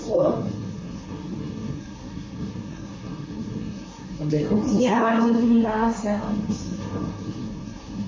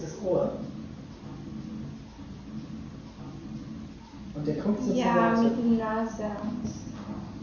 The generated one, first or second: first